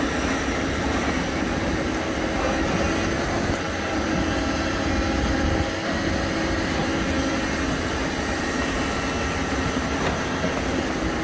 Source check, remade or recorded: recorded